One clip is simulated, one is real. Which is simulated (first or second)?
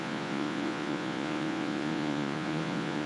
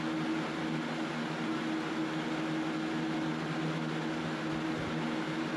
first